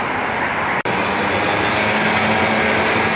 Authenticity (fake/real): real